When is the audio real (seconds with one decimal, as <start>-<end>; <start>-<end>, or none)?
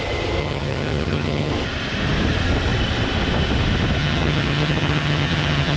0.0-0.4; 1.5-4.0